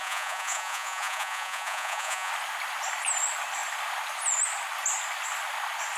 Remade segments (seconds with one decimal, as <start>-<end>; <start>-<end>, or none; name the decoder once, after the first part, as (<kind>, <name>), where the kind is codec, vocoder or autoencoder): 0.0-2.3 (vocoder, Vocos)